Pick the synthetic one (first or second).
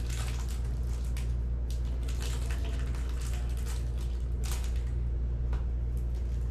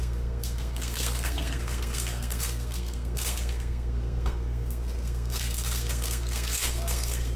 second